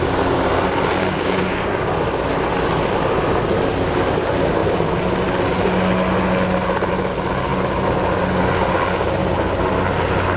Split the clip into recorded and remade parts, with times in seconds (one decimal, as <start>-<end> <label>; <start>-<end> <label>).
0.0-1.0 recorded; 1.0-1.7 remade; 1.7-10.4 recorded